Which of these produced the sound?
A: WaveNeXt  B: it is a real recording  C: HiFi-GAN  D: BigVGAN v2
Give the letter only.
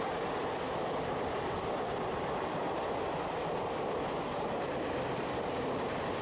B